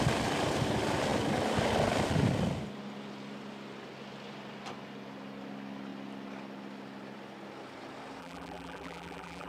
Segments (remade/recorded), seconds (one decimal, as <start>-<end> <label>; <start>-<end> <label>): 0.0-8.2 recorded; 8.2-9.5 remade